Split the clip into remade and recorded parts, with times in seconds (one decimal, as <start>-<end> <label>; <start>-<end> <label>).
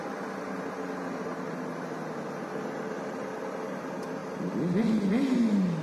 0.0-4.2 recorded; 4.2-4.9 remade; 4.9-5.8 recorded